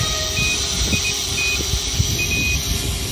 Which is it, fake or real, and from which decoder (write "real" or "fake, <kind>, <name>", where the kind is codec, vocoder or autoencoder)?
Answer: real